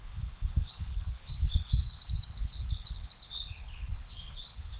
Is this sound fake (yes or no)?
yes